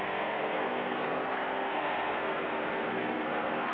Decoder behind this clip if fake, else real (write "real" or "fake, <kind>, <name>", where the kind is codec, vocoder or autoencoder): fake, codec, SNAC